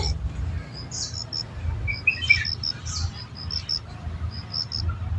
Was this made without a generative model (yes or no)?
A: yes